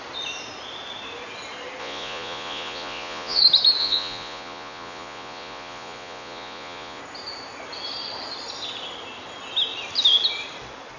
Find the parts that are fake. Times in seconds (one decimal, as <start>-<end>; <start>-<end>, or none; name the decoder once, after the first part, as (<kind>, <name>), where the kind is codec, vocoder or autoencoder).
1.8-3.4 (vocoder, Vocos); 3.8-7.0